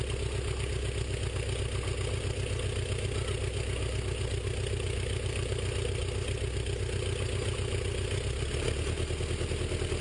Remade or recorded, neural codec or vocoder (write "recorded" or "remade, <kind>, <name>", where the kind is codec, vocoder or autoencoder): recorded